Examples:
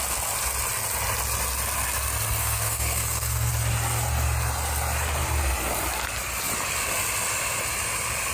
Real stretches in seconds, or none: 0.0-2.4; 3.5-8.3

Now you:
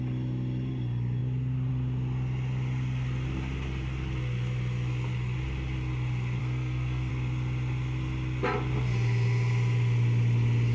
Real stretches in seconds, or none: 0.0-6.4; 7.1-10.7

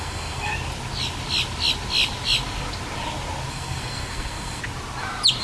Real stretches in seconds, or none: 0.5-3.5; 4.6-5.4

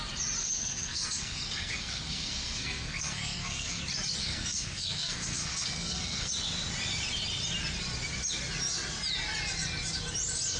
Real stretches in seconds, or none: 0.0-0.4; 3.8-4.2; 6.3-10.6

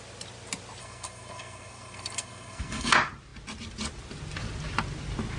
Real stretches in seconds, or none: 0.0-0.8; 2.9-5.4

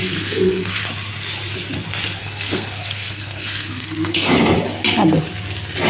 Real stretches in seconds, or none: 0.8-2.2; 4.3-5.9

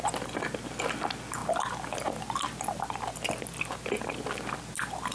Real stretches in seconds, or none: 0.0-5.1

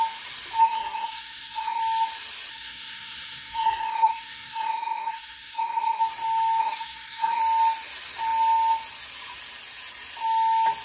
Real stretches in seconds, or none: 0.0-0.6; 1.8-2.5; 6.0-6.6; 7.4-10.8